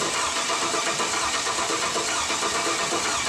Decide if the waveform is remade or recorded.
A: recorded